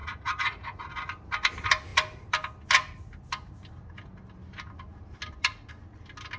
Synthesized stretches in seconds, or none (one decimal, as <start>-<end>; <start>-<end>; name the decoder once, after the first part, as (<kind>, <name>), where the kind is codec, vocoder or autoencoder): 0.0-0.8 (vocoder, Vocos)